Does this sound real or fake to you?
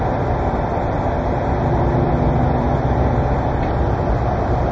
real